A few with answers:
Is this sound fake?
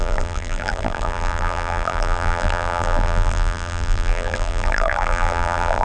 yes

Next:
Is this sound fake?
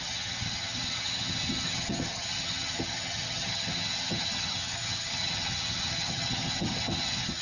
yes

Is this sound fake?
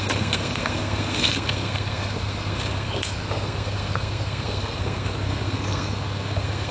yes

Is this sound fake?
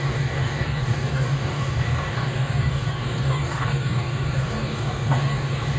yes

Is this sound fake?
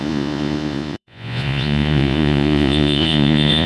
yes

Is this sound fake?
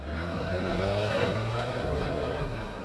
yes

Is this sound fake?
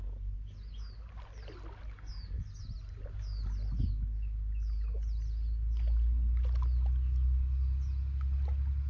no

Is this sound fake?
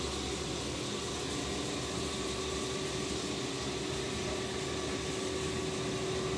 no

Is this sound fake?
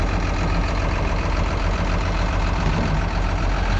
no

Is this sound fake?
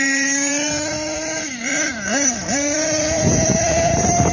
yes